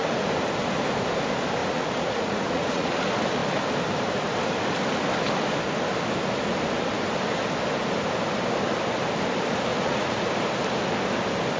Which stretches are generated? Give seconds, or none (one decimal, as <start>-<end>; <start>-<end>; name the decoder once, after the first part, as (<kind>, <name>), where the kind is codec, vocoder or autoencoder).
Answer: 1.6-2.9 (vocoder, Vocos); 9.7-10.3